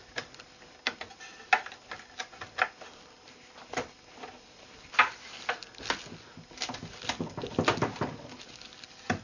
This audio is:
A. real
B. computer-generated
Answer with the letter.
A